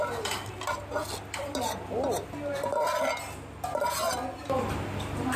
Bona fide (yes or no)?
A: yes